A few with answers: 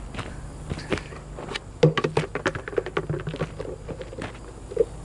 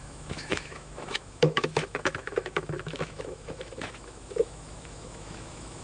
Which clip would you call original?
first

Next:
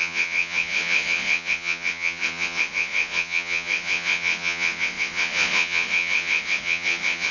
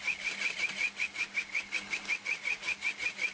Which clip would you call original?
second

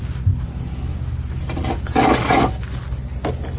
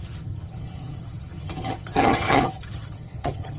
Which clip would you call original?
first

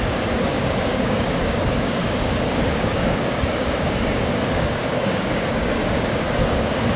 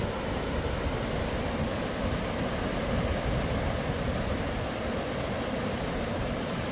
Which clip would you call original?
second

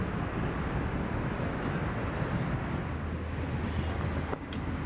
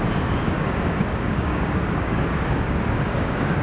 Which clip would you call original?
first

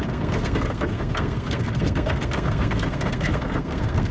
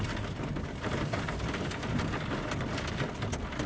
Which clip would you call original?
second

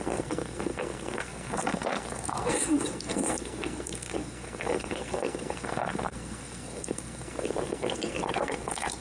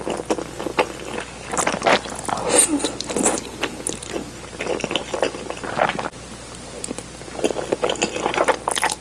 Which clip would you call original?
second